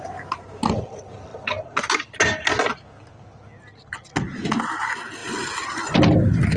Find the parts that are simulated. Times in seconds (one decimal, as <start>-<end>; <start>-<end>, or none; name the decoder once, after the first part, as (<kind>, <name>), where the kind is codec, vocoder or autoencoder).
none